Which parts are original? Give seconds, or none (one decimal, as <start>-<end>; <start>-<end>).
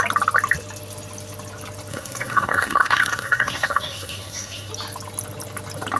0.0-1.9; 4.7-6.0